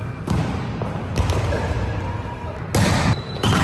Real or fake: real